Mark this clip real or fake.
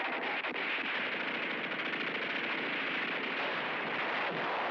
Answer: real